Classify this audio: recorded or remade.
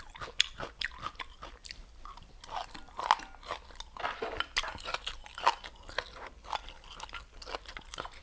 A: recorded